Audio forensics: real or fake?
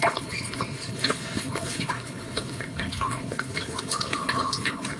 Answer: fake